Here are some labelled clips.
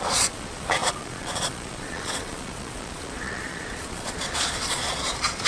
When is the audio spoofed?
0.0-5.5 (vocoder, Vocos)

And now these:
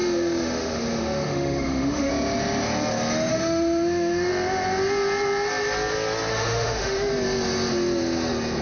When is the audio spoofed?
0.0-2.1 (autoencoder, DAC-VAE); 3.3-4.3; 6.3-7.1

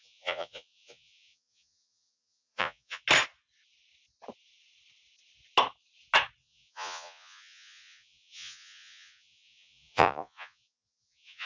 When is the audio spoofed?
0.0-3.0 (vocoder, Vocos); 6.4-11.5